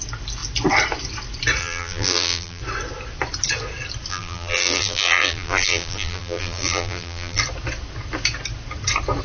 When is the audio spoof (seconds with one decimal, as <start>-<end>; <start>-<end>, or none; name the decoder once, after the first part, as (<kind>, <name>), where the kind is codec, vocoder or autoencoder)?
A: 1.6-2.6 (vocoder, BigVGAN v2); 4.1-7.4